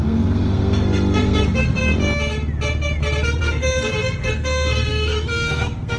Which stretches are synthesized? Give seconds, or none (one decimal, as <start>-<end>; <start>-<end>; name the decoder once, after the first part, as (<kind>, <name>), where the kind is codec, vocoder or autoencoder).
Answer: 0.0-1.8 (codec, SNAC); 3.4-6.0